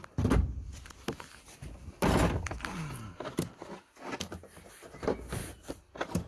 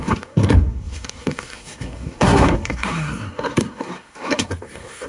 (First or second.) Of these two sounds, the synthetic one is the second